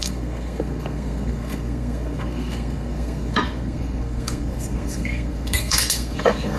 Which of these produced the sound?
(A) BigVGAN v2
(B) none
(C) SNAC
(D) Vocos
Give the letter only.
C